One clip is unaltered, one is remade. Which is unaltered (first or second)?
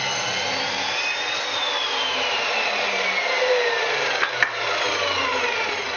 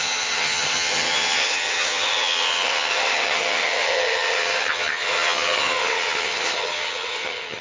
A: first